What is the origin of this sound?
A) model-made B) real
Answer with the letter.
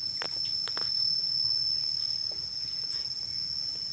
B